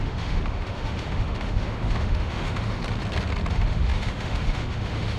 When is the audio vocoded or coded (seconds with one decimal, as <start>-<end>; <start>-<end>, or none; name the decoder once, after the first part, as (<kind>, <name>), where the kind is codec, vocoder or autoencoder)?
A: 0.0-2.8 (autoencoder, DAC-VAE); 3.5-5.2